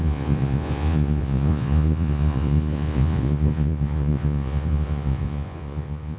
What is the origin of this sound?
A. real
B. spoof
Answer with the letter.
B